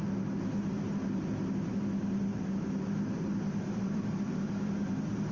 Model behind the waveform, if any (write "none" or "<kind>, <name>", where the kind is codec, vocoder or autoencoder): none